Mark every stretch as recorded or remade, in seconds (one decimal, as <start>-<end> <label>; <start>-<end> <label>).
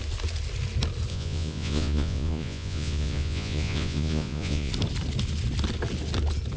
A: 0.0-1.1 recorded; 1.1-4.7 remade; 4.7-6.6 recorded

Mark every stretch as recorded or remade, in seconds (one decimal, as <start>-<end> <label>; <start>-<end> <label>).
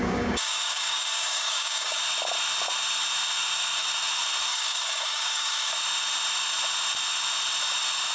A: 0.0-2.0 remade; 2.0-4.5 recorded; 4.5-5.7 remade; 5.7-8.1 recorded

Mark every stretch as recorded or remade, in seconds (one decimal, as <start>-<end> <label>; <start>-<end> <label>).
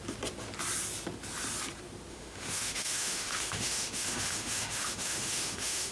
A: 0.0-2.1 recorded; 2.1-5.9 remade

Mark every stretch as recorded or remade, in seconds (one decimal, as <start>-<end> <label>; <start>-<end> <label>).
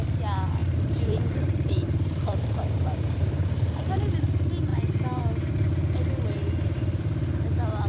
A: 0.0-0.6 recorded; 0.6-4.2 remade; 4.2-4.7 recorded; 4.7-5.2 remade; 5.2-7.9 recorded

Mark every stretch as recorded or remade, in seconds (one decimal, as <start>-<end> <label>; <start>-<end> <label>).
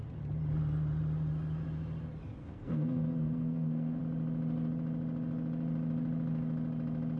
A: 0.0-2.4 recorded; 2.4-4.0 remade; 4.0-7.2 recorded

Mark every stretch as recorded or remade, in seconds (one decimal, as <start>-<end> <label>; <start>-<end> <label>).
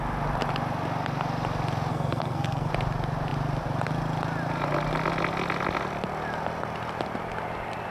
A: 0.0-1.9 recorded; 1.9-2.7 remade; 2.7-7.9 recorded